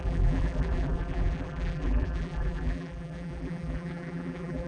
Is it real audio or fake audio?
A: fake